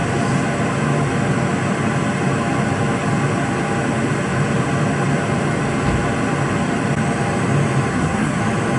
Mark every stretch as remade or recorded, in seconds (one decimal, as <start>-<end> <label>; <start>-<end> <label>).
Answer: 0.0-7.9 recorded; 7.9-8.4 remade; 8.4-8.8 recorded